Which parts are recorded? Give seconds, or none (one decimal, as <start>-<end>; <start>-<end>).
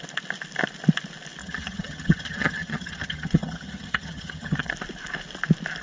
0.0-1.4; 4.7-5.8